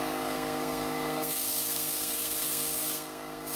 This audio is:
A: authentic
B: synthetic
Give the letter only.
B